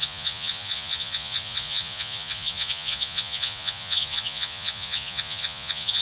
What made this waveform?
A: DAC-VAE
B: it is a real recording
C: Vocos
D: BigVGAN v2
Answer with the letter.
C